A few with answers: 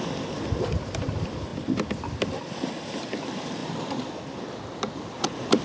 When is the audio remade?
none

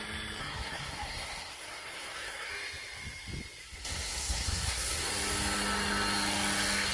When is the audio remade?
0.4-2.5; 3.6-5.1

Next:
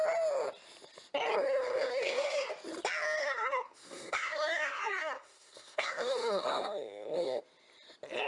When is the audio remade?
1.3-2.5; 3.2-7.4

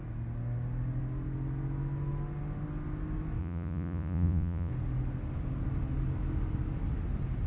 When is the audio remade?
3.4-4.7

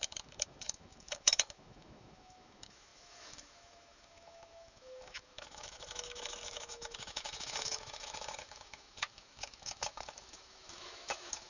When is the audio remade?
0.0-11.5

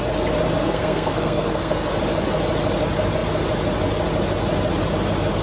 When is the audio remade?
0.6-1.9

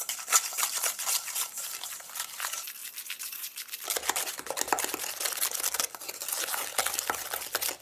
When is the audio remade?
2.8-4.4

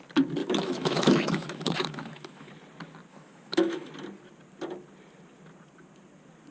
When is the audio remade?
0.4-2.5; 3.1-3.9